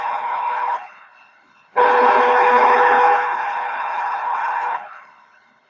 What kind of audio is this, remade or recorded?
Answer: remade